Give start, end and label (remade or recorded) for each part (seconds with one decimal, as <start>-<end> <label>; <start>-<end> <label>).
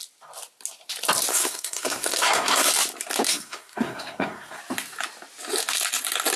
0.0-1.3 recorded; 1.3-2.7 remade; 2.7-3.3 recorded; 3.3-4.6 remade; 4.6-6.4 recorded